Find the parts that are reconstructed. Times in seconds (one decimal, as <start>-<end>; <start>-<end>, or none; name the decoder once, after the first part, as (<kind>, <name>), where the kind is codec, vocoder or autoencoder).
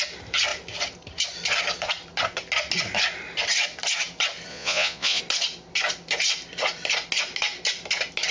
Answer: 4.5-5.2 (vocoder, Vocos)